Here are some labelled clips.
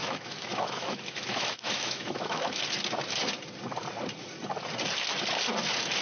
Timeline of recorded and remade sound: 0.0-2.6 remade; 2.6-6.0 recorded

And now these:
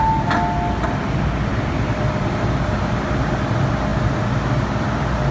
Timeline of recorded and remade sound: 0.0-5.3 recorded

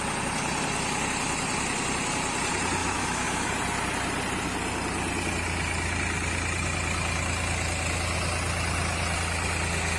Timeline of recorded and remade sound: 0.0-2.8 recorded; 2.8-3.5 remade; 3.5-10.0 recorded

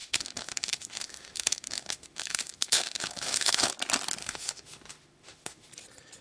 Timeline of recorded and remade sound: 0.0-3.7 remade; 3.7-4.2 recorded; 4.2-5.7 remade; 5.7-6.2 recorded

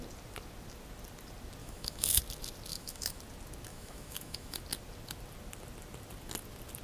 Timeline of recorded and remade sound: 0.0-1.6 recorded; 1.6-2.2 remade; 2.2-2.7 recorded; 2.7-3.2 remade; 3.2-3.7 recorded; 3.7-4.6 remade; 4.6-6.8 recorded